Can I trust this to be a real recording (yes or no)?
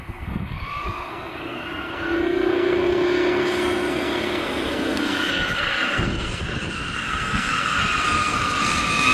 no